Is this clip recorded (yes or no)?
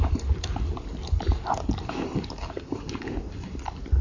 yes